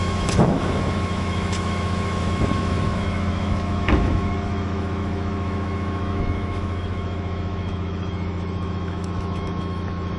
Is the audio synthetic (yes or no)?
yes